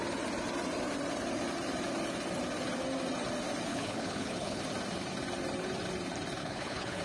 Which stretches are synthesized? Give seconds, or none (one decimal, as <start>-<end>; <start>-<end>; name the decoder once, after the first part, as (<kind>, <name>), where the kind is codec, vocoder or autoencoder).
3.7-4.6 (codec, HILCodec); 6.4-7.0